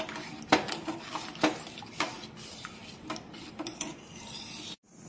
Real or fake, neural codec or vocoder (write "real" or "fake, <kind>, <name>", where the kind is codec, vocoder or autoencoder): real